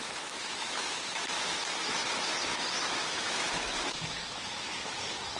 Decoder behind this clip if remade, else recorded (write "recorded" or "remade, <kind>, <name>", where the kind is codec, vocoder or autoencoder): remade, autoencoder, DAC-VAE